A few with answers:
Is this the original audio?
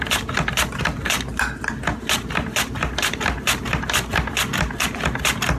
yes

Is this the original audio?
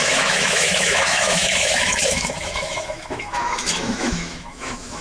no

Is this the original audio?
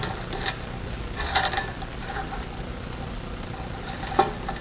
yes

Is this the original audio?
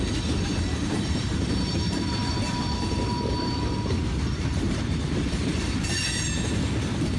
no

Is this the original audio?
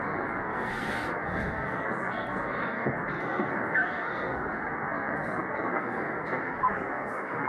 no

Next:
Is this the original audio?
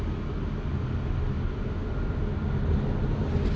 yes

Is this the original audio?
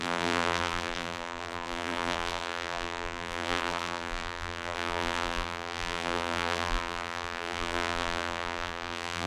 no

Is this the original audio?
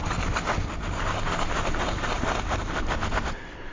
yes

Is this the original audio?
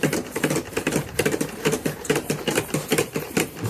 no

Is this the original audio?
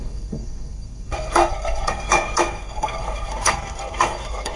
no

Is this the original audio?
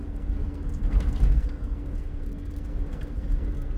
no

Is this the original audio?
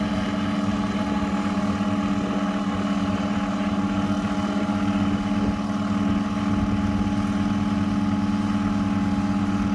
yes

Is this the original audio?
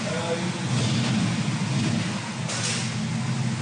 yes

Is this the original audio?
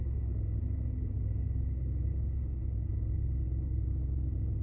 yes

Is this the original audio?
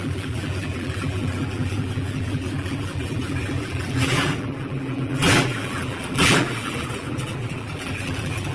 no